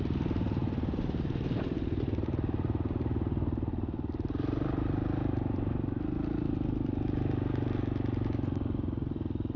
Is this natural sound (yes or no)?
yes